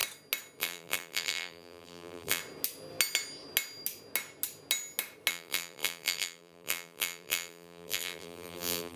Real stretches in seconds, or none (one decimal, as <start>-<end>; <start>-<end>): 0.0-0.6; 2.4-5.3